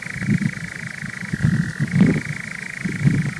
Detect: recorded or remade recorded